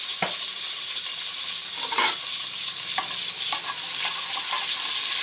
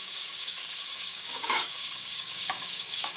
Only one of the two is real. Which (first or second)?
first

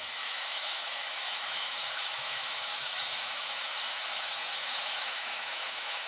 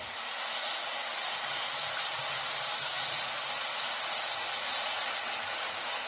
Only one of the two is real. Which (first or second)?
second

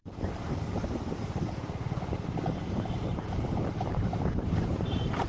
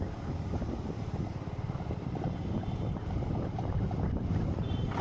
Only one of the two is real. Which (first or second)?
second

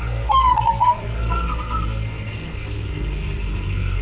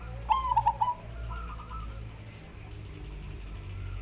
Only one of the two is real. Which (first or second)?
second